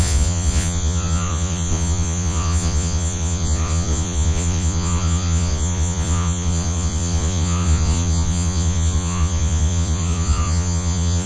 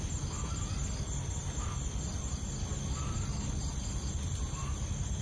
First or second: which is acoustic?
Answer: second